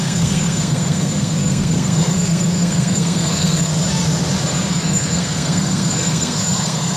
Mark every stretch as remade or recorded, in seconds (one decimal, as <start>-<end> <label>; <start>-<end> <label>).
0.0-3.7 remade; 3.7-4.7 recorded; 4.7-7.0 remade